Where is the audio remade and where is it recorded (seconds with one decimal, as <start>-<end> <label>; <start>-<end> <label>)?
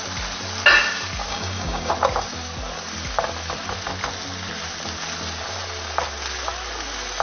0.0-1.3 recorded; 1.3-1.9 remade; 1.9-7.2 recorded